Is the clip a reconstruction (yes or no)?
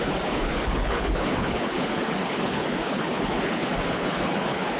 yes